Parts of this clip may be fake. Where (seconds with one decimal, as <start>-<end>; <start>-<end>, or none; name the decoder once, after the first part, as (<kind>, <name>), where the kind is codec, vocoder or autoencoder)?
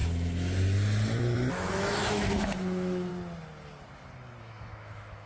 1.5-3.1 (autoencoder, DAC-VAE); 4.4-5.3